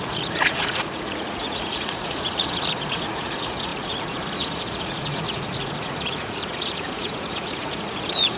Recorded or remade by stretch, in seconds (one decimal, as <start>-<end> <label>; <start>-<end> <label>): 0.0-8.4 remade